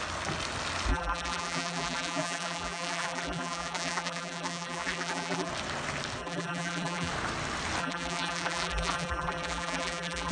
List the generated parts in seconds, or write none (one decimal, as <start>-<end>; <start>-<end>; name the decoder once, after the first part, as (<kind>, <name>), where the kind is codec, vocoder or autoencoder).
0.9-5.5 (vocoder, BigVGAN v2); 6.2-7.1; 7.8-10.3